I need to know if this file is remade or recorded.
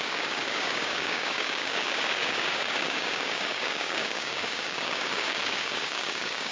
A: remade